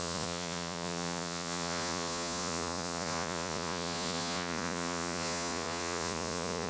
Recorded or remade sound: remade